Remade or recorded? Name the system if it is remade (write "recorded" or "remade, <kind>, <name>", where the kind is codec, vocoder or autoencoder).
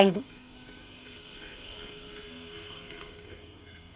remade, codec, SNAC